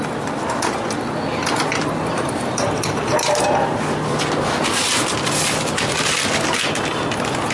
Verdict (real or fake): real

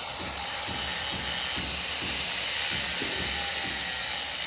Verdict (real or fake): real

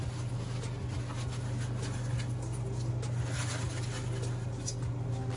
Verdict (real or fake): real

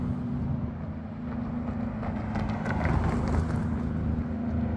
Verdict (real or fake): real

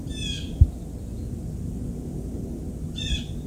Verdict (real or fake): real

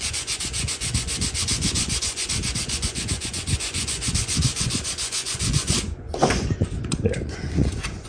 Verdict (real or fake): fake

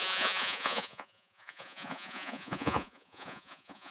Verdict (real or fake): fake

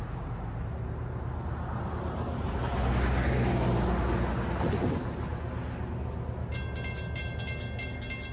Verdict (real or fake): real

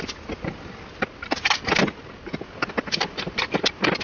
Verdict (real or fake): real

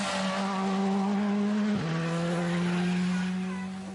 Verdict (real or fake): real